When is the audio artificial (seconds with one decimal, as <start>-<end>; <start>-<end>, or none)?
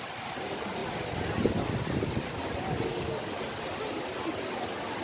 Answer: 2.9-3.4